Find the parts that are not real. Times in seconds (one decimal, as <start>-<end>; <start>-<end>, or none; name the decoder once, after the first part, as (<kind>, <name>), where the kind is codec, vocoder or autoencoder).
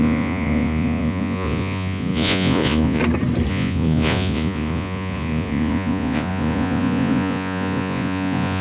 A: 0.0-3.0 (vocoder, Vocos); 3.5-8.6